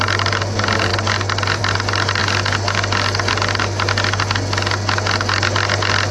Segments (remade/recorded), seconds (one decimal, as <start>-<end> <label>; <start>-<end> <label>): 0.0-6.1 recorded